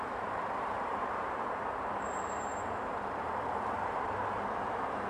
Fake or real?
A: fake